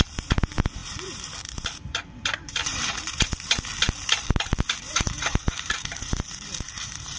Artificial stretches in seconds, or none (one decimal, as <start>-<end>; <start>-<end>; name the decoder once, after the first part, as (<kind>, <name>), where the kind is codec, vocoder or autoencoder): 0.0-3.7 (vocoder, BigVGAN v2); 4.9-7.2